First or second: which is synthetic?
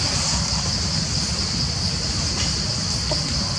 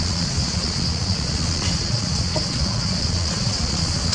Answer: second